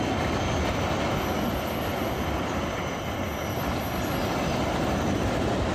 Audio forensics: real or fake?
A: real